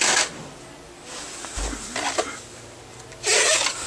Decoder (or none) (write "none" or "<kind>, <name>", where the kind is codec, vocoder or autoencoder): none